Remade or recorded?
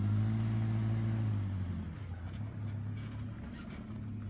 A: recorded